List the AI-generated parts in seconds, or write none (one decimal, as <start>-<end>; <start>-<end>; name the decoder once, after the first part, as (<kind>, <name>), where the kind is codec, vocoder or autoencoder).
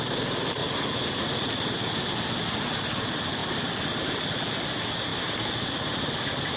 0.6-1.5 (vocoder, Vocos)